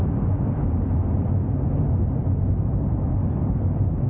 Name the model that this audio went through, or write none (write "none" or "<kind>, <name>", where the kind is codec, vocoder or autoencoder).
none